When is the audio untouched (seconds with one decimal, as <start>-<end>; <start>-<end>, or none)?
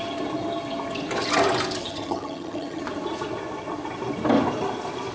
0.0-1.8; 2.8-5.1